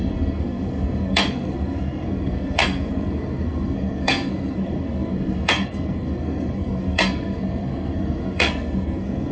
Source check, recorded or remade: remade